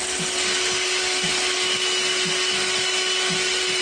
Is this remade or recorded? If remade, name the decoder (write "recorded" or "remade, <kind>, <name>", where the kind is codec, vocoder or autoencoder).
recorded